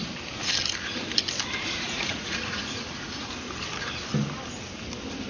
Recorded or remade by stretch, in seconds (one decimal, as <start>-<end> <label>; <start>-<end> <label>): 0.0-1.6 recorded; 1.6-3.2 remade; 3.2-5.3 recorded